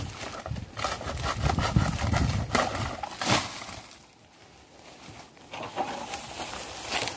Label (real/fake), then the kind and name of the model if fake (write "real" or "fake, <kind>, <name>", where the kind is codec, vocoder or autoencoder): real